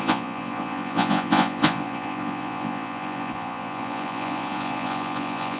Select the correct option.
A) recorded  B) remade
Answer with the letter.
B